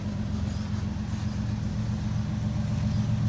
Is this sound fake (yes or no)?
no